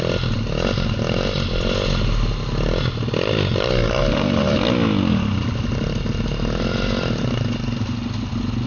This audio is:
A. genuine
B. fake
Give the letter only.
A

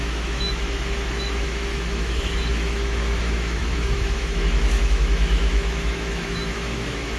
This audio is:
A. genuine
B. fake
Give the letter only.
B